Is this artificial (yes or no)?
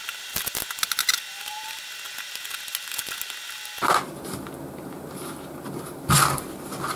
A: no